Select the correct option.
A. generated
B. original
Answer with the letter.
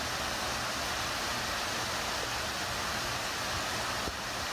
B